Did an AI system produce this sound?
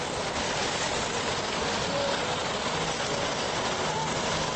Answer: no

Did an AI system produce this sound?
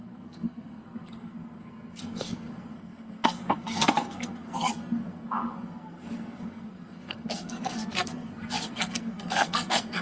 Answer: yes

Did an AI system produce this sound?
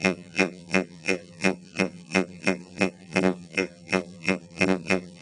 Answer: yes